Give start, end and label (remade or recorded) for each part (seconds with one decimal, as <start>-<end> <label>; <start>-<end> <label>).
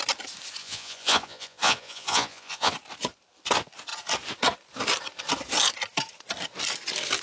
0.0-0.6 recorded; 0.6-2.7 remade; 2.7-7.2 recorded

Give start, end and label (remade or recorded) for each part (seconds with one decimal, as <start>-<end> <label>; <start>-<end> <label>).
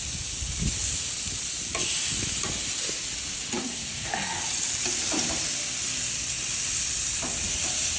0.0-3.6 recorded; 3.6-4.1 remade; 4.1-8.0 recorded